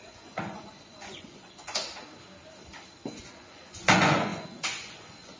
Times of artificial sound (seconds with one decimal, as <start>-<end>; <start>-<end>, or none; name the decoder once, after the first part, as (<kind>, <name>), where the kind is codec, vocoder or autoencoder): 0.0-1.8 (vocoder, Vocos); 3.2-5.4